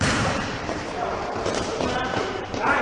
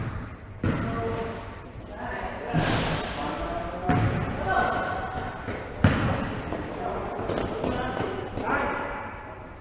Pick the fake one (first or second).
first